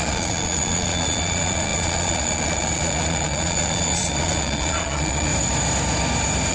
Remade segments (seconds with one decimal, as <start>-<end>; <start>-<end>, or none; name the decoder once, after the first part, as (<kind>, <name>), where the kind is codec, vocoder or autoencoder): 0.0-5.3 (vocoder, Vocos)